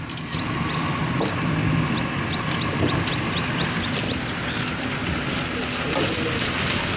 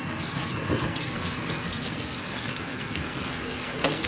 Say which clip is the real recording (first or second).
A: first